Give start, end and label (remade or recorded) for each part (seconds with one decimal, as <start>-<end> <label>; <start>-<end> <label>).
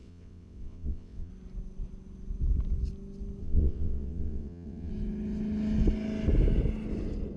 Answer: 0.0-1.3 remade; 1.3-3.4 recorded; 3.4-4.9 remade; 4.9-7.4 recorded